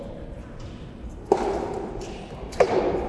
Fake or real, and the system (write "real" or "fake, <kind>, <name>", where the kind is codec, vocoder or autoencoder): real